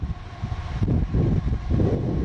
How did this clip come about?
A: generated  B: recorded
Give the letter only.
A